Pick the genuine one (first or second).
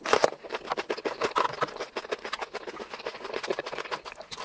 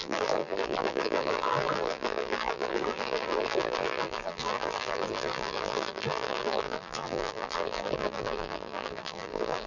first